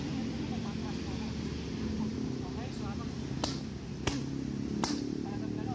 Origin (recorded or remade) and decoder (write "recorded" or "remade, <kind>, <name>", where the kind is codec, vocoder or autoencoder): recorded